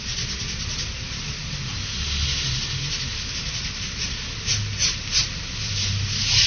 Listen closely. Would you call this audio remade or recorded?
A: recorded